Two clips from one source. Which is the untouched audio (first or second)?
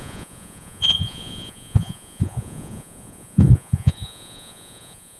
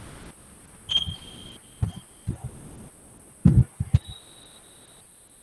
second